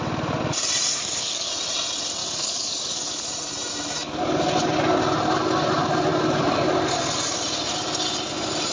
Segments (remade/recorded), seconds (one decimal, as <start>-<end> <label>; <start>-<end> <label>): 0.0-0.9 recorded; 0.9-1.5 remade; 1.5-2.2 recorded; 2.2-3.1 remade; 3.1-8.7 recorded